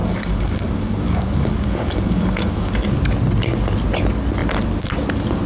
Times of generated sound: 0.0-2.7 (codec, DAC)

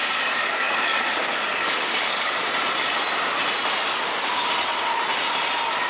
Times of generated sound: 0.0-2.4 (codec, DAC)

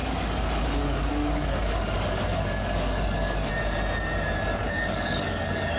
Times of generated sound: 0.0-3.5 (codec, DAC); 4.6-5.8

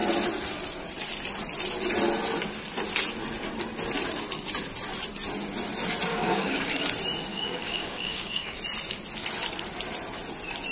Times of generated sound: 6.1-6.7 (codec, DAC); 7.3-8.6